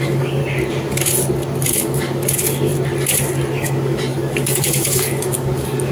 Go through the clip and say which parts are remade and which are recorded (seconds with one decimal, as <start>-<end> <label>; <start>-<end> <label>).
0.0-0.4 remade; 0.4-1.8 recorded; 1.8-2.7 remade; 2.7-3.5 recorded; 3.5-5.9 remade